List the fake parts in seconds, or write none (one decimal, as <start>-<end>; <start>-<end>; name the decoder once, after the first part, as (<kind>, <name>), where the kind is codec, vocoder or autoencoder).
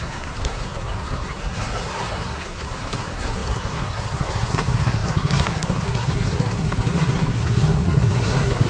0.0-8.7 (codec, SNAC)